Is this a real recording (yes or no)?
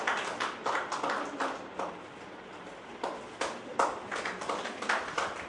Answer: yes